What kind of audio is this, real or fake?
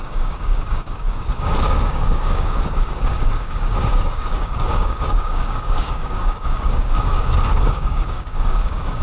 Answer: fake